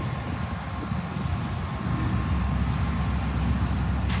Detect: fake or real real